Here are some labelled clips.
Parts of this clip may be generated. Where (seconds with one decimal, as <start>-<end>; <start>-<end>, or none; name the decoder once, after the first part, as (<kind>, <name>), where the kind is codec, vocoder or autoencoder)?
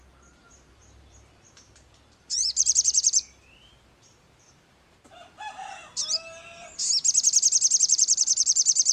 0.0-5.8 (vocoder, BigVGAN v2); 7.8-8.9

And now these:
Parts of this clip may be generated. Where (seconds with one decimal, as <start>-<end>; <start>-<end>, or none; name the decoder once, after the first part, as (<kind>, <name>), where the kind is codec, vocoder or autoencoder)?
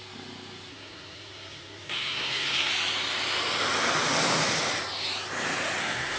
0.7-2.7 (codec, SNAC); 5.8-6.2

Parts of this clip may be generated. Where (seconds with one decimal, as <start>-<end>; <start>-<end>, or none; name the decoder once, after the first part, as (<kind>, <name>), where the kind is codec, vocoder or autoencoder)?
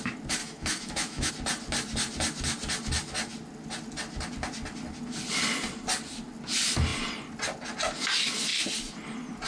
0.4-1.3 (autoencoder, DAC-VAE)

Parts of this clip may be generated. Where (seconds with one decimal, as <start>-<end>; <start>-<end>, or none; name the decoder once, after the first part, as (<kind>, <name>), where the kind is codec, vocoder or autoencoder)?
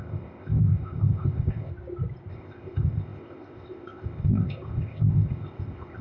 0.0-1.7 (codec, ZipCodec); 2.3-6.0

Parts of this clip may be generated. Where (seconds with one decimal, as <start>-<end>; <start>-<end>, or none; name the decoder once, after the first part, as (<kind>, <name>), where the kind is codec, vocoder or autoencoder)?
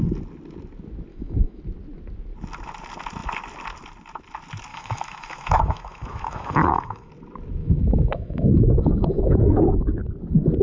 1.1-1.6 (autoencoder, DAC-VAE); 4.7-7.1; 7.6-10.1